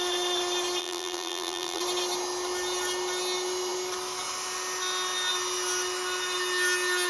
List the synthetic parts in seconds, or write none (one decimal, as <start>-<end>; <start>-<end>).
0.8-1.8